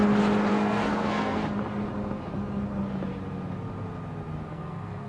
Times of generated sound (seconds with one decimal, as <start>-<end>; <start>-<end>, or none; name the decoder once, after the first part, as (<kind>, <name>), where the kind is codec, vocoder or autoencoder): 0.5-1.4 (codec, SNAC); 4.5-5.1